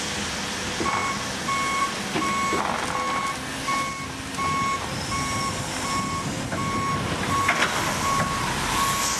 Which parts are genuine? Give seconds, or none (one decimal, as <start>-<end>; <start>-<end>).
0.0-9.2